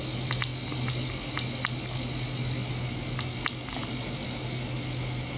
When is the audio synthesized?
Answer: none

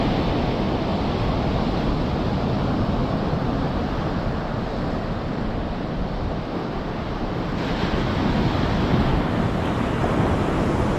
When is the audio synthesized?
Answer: 0.9-2.3 (vocoder, BigVGAN v2); 3.0-4.3

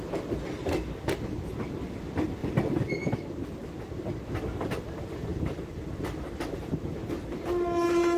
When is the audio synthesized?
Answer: 5.3-8.2 (vocoder, BigVGAN v2)

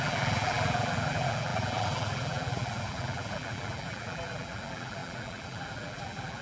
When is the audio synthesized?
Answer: 0.0-6.4 (vocoder, BigVGAN v2)

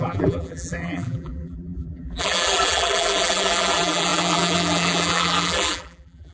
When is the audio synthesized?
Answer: 0.0-6.3 (vocoder, BigVGAN v2)

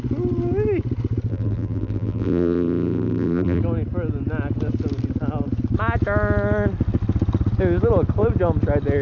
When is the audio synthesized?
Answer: 1.3-3.6 (vocoder, BigVGAN v2)

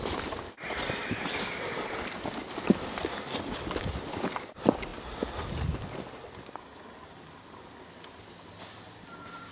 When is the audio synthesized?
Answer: none

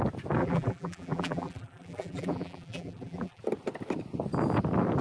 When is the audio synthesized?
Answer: 0.4-3.4 (vocoder, BigVGAN v2)